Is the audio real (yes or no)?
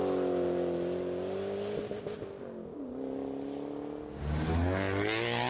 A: yes